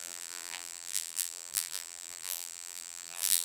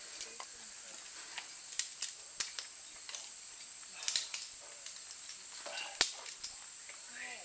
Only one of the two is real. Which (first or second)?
second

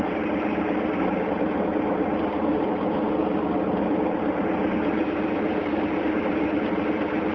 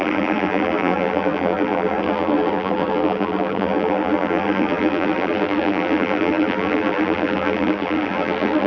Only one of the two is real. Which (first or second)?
first